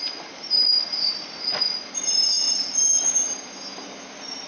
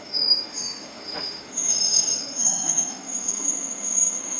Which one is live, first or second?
first